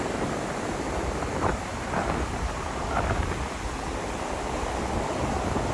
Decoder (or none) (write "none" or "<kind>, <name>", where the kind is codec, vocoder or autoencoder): none